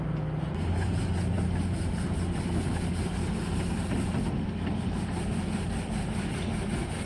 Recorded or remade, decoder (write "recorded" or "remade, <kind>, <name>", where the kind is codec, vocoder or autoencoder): recorded